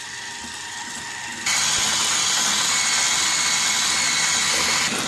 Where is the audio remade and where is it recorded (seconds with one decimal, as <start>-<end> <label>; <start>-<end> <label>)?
0.0-5.1 recorded